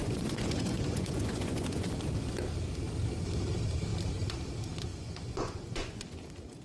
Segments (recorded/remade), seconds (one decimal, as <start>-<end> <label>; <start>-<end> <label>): 0.0-1.9 remade; 1.9-4.9 recorded; 4.9-6.0 remade; 6.0-6.6 recorded